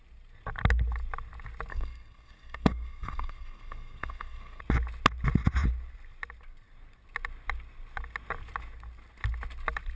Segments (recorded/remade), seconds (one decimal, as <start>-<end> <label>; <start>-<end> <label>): 0.0-1.7 recorded; 1.7-4.6 remade; 4.6-10.0 recorded